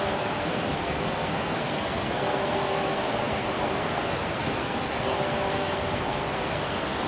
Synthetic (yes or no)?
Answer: yes